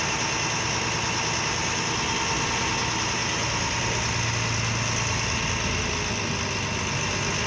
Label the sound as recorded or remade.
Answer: recorded